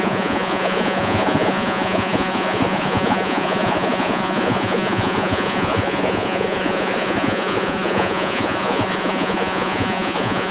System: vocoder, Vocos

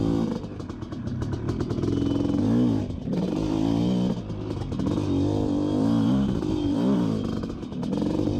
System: none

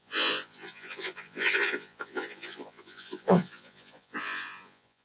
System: vocoder, Vocos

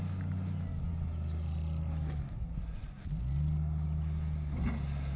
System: none